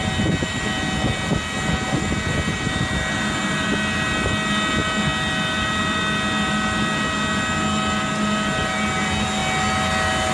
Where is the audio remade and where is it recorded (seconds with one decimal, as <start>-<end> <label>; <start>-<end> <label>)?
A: 0.0-10.3 recorded